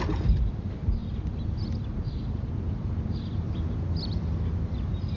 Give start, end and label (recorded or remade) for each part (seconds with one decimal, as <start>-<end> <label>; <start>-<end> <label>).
0.0-5.2 recorded